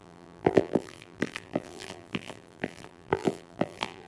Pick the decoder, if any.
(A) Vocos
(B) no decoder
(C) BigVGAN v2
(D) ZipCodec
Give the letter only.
C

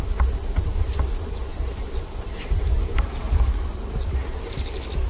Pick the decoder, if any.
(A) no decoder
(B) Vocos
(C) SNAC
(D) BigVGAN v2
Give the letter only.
A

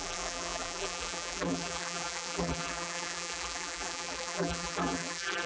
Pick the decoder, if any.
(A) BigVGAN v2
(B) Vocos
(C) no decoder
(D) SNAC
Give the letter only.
A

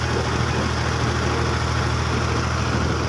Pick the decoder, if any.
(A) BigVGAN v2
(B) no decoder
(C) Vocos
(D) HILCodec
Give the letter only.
B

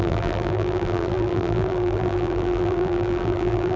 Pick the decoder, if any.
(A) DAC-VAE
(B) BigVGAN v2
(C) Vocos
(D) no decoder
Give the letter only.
B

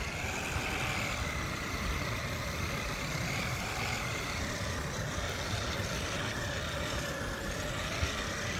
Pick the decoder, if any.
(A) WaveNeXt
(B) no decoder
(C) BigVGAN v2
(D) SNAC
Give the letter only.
B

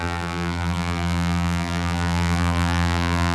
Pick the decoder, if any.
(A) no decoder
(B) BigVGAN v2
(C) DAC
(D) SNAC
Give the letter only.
B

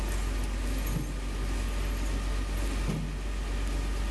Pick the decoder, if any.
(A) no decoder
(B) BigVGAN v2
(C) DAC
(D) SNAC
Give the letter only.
A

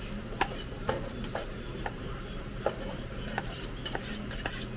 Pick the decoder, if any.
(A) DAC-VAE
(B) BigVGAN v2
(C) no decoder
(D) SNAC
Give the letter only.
B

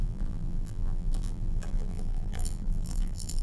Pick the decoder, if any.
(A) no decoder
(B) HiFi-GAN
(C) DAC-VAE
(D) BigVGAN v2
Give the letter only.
D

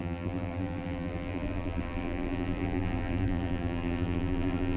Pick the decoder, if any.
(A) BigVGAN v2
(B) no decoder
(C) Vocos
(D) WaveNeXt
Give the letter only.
A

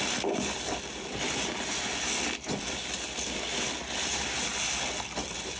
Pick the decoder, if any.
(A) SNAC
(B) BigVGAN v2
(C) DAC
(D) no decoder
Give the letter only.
D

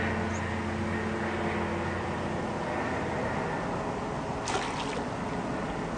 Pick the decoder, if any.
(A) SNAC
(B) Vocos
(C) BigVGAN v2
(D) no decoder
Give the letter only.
D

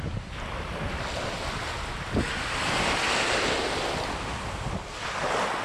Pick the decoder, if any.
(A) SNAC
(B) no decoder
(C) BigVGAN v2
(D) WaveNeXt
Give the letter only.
B